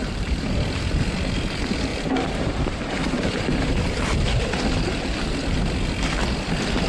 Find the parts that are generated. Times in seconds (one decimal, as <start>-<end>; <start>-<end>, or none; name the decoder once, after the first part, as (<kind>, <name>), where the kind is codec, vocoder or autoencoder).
0.0-0.5 (vocoder, BigVGAN v2); 1.9-4.6